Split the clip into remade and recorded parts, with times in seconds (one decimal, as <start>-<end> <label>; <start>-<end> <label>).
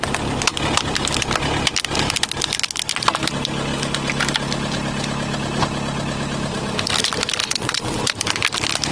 0.0-7.4 recorded; 7.4-8.0 remade; 8.0-8.9 recorded